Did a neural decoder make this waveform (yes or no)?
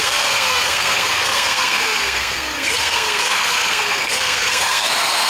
yes